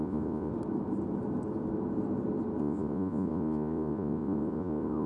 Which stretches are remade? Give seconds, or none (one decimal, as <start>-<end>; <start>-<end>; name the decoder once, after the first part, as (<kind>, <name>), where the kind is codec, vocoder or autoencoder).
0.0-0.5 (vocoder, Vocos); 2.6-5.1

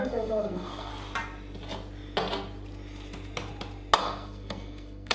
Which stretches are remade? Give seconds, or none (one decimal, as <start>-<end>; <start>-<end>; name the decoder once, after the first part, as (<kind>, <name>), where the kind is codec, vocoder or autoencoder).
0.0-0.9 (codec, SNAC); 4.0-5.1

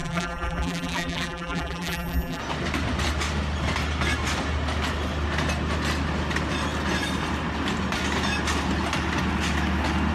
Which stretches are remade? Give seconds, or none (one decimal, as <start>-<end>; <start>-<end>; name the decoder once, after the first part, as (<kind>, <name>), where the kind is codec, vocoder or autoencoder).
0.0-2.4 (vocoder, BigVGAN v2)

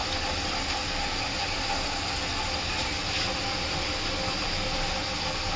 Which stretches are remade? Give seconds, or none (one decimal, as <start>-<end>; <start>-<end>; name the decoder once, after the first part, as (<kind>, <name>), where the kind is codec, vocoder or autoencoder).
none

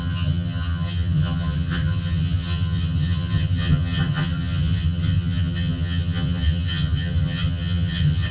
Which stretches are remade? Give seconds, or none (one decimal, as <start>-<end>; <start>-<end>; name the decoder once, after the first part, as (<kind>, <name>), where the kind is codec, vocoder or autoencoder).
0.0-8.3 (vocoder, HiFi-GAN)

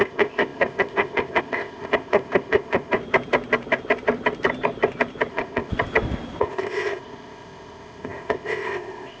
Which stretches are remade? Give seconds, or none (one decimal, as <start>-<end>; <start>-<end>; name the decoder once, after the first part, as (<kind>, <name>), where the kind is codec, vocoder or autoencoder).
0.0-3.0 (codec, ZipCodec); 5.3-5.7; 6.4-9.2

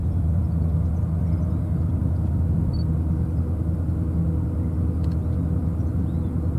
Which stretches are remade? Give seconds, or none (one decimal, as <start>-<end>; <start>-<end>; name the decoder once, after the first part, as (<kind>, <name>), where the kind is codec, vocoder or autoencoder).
0.0-0.9 (vocoder, Vocos)

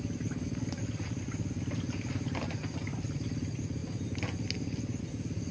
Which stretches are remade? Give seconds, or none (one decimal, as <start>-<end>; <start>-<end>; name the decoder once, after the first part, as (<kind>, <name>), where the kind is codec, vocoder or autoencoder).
none